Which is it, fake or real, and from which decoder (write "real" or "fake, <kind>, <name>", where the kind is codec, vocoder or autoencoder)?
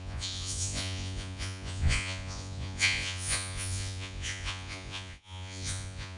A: fake, vocoder, Vocos